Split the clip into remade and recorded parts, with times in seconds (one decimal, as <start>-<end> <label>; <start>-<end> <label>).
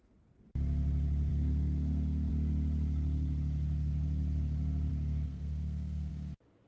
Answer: 0.0-1.3 recorded; 1.3-2.3 remade; 2.3-4.9 recorded; 4.9-6.1 remade; 6.1-6.7 recorded